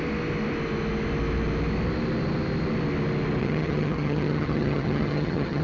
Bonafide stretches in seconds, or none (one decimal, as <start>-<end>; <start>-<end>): 0.0-3.4